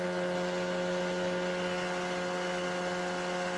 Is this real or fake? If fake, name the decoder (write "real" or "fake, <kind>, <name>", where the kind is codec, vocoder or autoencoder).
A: real